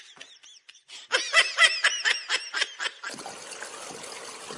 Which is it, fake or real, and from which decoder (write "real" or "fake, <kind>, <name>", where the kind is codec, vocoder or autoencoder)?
real